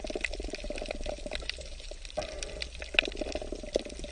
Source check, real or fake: real